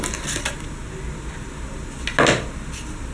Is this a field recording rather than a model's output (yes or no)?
yes